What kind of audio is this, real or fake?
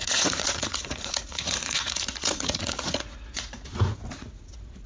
fake